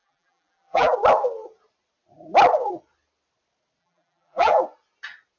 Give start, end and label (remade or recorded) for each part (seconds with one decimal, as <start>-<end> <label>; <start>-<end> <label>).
0.0-0.9 remade; 0.9-3.8 recorded; 3.8-4.6 remade; 4.6-5.4 recorded